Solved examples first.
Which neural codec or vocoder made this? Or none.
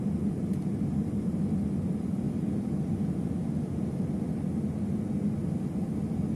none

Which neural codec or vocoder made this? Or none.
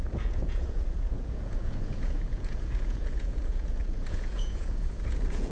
vocoder, Vocos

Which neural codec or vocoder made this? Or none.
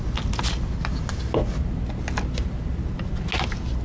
none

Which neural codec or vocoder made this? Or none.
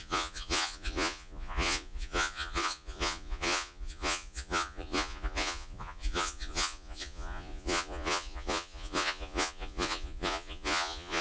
vocoder, Vocos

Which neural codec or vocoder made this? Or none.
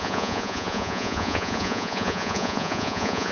vocoder, Vocos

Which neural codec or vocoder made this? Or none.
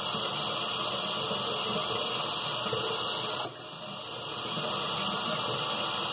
none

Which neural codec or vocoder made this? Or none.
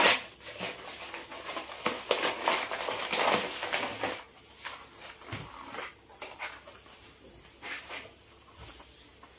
none